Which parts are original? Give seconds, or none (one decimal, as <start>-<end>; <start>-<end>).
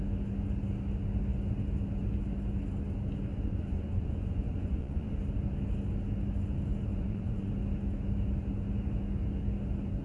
0.0-3.3; 5.2-6.9; 7.5-10.0